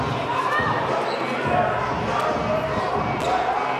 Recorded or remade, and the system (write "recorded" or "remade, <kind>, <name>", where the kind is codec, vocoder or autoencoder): recorded